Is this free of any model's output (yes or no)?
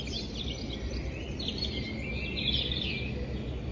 yes